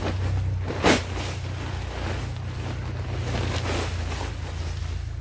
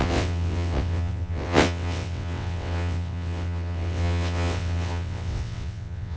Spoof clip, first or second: second